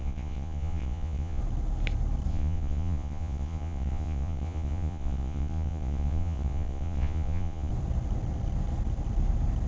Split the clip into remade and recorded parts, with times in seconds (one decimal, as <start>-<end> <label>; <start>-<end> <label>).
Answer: 0.0-1.4 remade; 1.4-2.3 recorded; 2.3-7.7 remade; 7.7-9.7 recorded